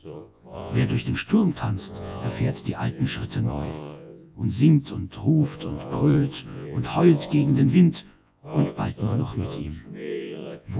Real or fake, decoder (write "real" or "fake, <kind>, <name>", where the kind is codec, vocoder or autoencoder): fake, vocoder, Vocos